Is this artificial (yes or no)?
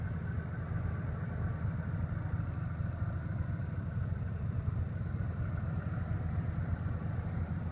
no